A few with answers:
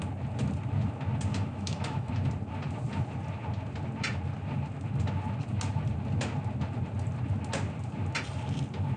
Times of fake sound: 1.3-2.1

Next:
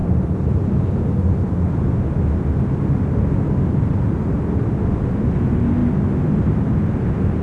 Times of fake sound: none

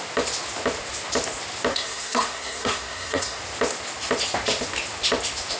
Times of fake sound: 1.7-3.4

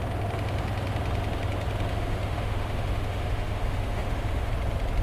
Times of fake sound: 1.9-4.5

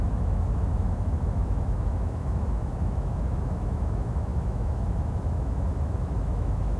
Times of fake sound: 0.0-6.8

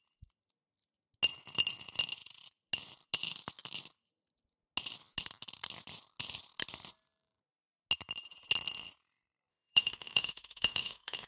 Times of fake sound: 9.5-11.3

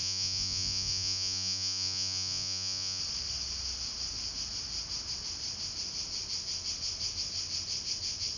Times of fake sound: 0.0-3.0